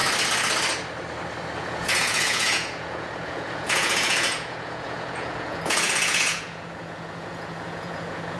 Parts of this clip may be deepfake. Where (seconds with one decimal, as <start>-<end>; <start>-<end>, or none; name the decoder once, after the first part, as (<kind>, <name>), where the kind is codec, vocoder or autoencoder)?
1.6-8.4 (vocoder, Vocos)

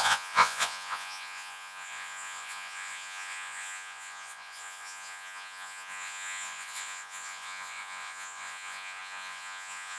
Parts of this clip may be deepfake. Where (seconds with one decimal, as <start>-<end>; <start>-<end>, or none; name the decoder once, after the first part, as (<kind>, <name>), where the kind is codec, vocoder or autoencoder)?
0.0-10.0 (vocoder, Vocos)

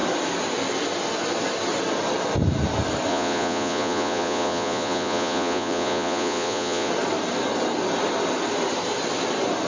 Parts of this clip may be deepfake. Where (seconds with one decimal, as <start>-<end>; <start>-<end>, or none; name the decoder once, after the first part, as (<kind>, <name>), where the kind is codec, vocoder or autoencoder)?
3.1-6.9 (vocoder, Vocos)

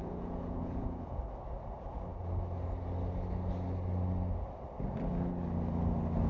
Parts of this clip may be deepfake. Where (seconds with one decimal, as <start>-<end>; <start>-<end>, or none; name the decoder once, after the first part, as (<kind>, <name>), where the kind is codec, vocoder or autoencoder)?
0.0-1.2 (vocoder, Vocos)

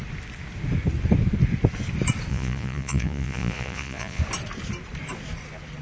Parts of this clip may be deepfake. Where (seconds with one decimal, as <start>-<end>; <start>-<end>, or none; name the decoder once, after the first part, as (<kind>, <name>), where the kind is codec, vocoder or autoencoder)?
2.3-4.2 (vocoder, Vocos)